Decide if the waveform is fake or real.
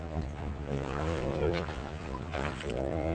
fake